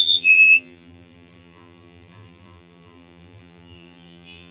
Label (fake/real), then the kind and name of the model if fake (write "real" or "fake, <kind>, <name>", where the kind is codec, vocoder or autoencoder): fake, vocoder, BigVGAN v2